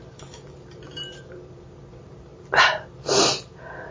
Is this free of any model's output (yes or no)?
no